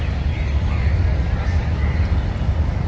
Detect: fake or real real